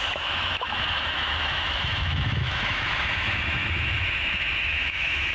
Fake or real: fake